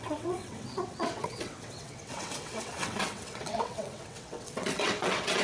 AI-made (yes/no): yes